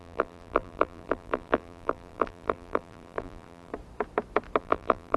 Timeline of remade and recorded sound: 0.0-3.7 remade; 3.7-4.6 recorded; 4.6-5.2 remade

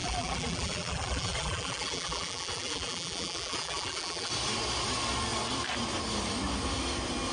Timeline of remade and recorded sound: 0.0-4.3 remade; 4.3-7.3 recorded

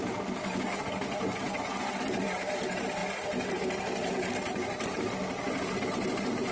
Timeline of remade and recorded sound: 0.0-3.0 remade; 3.0-5.9 recorded; 5.9-6.5 remade